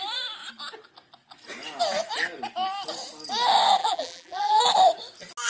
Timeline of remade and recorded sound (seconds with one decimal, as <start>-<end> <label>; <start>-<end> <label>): 0.0-3.8 recorded; 3.8-4.6 remade; 4.6-5.5 recorded